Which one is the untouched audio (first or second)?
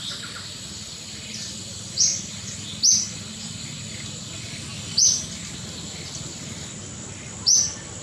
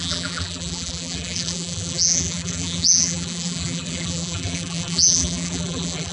first